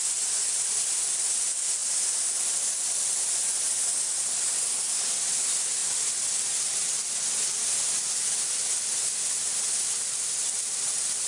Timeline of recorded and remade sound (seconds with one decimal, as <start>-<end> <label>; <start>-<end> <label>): 0.0-11.3 recorded